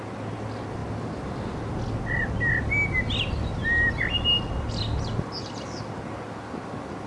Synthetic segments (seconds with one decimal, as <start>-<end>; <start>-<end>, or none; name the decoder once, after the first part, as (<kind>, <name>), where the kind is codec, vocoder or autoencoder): none